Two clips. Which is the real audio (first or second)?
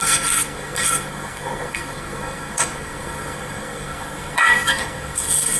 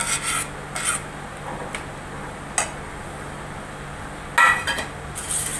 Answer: second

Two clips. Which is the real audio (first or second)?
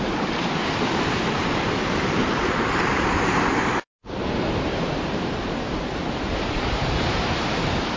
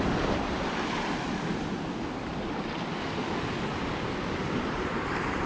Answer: second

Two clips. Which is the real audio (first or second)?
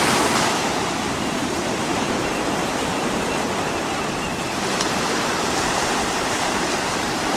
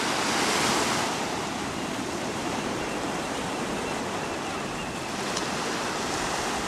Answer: second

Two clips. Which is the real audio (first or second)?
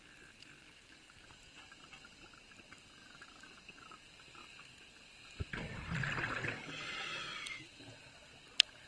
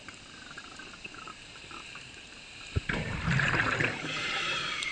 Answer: first